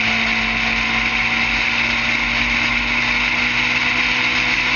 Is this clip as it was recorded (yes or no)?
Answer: yes